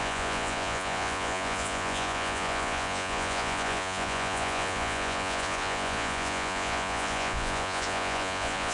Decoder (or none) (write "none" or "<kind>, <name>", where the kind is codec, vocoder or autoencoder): vocoder, Vocos